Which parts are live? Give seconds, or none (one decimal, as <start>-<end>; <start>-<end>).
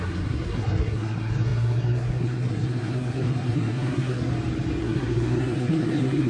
4.3-4.8